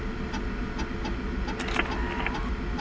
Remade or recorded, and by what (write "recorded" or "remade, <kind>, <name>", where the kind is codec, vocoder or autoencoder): recorded